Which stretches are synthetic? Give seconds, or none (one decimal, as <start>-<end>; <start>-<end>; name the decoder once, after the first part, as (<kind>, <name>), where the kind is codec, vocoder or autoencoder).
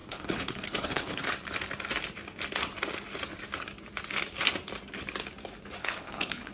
0.0-1.3 (codec, HILCodec); 5.8-6.5